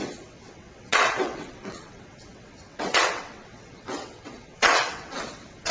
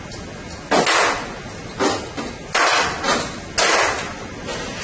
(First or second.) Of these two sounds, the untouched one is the second